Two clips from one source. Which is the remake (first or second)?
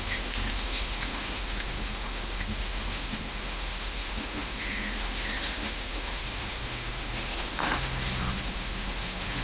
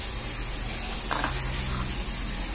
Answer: first